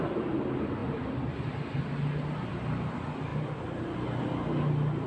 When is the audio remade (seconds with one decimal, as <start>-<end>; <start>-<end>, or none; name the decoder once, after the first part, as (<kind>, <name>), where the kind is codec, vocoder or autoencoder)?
none